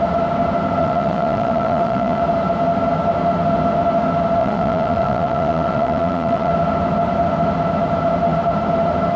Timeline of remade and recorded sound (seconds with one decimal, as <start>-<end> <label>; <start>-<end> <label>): 0.0-0.8 recorded; 0.8-2.2 remade; 2.2-4.4 recorded; 4.4-6.5 remade; 6.5-9.2 recorded